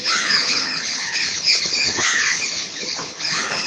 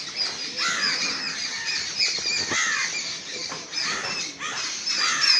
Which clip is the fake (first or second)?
first